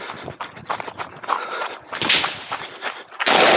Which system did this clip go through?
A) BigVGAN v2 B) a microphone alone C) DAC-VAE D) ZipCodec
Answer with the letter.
B